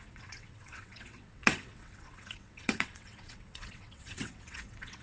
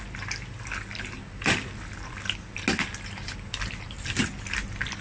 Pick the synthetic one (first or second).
first